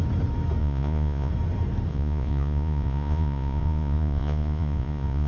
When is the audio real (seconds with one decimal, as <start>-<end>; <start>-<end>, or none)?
0.0-0.6; 1.3-1.9